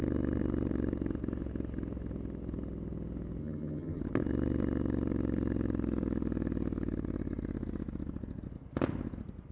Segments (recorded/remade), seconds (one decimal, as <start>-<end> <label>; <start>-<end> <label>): 0.0-3.4 recorded; 3.4-4.0 remade; 4.0-9.5 recorded